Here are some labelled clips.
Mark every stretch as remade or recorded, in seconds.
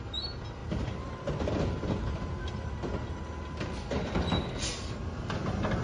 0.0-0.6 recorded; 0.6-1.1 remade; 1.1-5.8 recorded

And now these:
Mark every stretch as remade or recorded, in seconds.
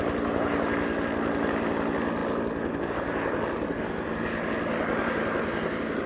0.0-2.2 recorded; 2.2-2.9 remade; 2.9-6.1 recorded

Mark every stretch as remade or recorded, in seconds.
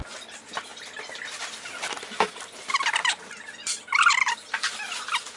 0.0-5.4 recorded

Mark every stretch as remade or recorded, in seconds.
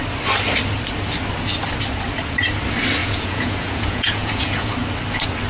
0.0-3.0 recorded; 3.0-4.7 remade; 4.7-5.5 recorded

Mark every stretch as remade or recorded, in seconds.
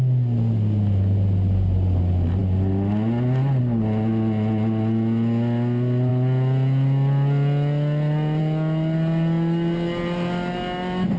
0.0-11.2 recorded